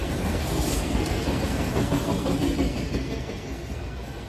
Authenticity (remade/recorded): remade